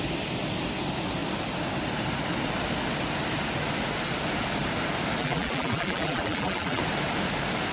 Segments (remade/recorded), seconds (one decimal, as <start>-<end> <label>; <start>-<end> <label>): 0.0-5.2 recorded; 5.2-6.8 remade; 6.8-7.7 recorded